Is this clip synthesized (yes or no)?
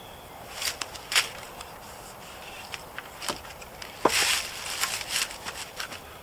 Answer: no